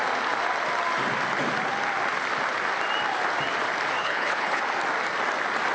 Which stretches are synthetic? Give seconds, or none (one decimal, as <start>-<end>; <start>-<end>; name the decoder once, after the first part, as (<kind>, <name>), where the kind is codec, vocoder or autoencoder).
4.0-4.6 (codec, HILCodec)